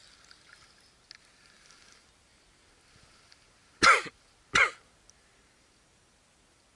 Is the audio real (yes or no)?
yes